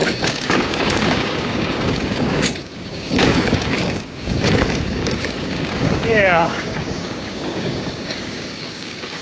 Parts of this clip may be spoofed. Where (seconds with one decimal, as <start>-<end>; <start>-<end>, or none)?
0.0-9.2

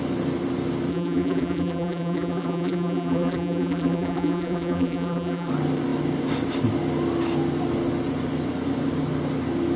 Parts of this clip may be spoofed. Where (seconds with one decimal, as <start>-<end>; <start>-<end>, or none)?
0.9-5.5

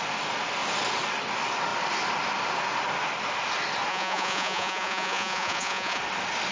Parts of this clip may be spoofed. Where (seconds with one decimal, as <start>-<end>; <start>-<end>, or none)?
3.9-6.0

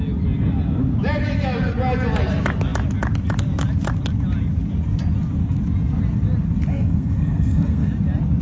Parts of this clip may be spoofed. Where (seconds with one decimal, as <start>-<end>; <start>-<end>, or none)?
6.7-7.9

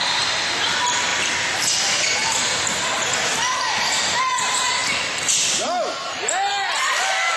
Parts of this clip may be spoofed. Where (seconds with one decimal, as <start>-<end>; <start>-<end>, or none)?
none

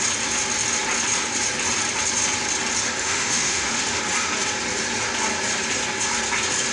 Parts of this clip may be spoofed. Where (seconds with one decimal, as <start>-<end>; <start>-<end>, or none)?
3.0-4.0

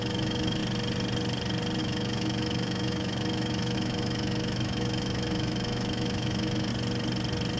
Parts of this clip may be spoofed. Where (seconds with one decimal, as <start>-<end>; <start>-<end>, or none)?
0.0-0.6; 1.8-6.7

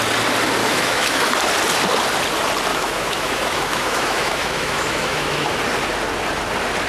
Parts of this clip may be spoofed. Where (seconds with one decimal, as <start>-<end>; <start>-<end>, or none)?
0.6-1.3; 2.7-5.6